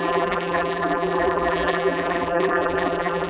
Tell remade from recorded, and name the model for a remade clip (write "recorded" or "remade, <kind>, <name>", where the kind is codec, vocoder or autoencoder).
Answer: remade, vocoder, BigVGAN v2